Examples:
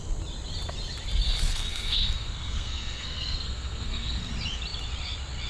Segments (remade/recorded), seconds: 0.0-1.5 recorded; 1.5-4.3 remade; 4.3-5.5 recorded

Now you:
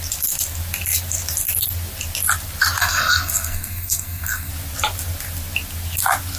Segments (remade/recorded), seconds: 0.0-2.8 recorded; 2.8-4.5 remade; 4.5-6.4 recorded

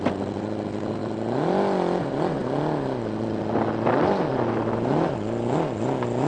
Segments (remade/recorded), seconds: 0.0-6.3 recorded

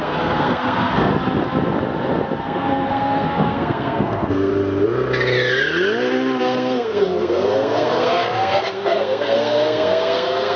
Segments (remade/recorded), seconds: 0.0-1.1 remade; 1.1-2.4 recorded; 2.4-4.5 remade; 4.5-6.4 recorded; 6.4-10.6 remade

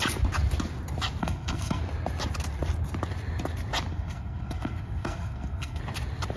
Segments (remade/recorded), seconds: 0.0-1.2 recorded; 1.2-1.8 remade; 1.8-3.9 recorded; 3.9-5.8 remade; 5.8-6.4 recorded

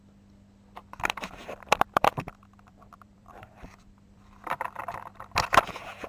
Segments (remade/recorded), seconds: 0.0-1.4 recorded; 1.4-4.8 remade; 4.8-6.1 recorded

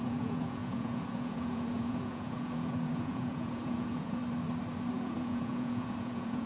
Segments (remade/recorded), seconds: 0.0-4.2 remade; 4.2-4.9 recorded; 4.9-6.5 remade